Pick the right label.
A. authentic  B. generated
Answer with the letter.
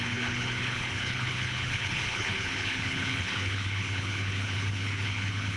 B